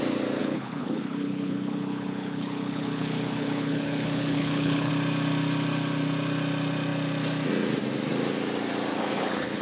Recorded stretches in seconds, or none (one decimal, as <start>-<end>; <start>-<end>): 0.0-0.4; 4.9-8.9